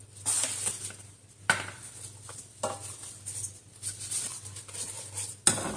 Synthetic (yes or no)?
no